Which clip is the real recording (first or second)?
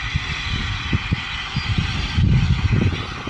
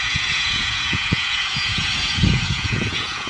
first